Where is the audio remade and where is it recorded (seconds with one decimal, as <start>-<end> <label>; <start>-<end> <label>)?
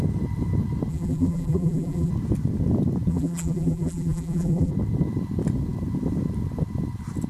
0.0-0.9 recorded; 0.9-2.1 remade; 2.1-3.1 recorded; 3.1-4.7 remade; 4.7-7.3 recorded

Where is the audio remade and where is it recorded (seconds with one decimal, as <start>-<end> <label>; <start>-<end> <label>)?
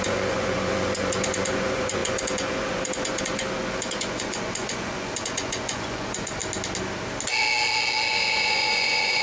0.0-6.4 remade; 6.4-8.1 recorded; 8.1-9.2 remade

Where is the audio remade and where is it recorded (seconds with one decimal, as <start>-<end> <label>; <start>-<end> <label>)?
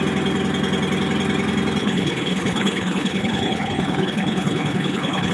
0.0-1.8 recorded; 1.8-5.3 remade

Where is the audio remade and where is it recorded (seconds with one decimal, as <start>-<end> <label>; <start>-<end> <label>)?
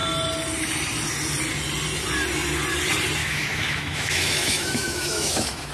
0.0-3.2 recorded; 3.2-5.7 remade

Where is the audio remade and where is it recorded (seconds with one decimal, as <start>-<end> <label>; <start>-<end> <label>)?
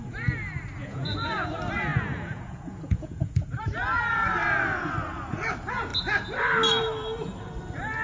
0.0-0.8 recorded; 0.8-1.5 remade; 1.5-1.9 recorded; 1.9-3.6 remade; 3.6-8.0 recorded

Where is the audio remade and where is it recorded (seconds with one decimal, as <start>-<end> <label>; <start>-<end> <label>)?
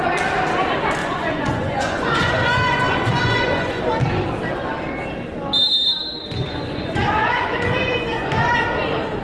0.0-1.0 recorded; 1.0-3.8 remade; 3.8-6.4 recorded; 6.4-8.5 remade; 8.5-9.2 recorded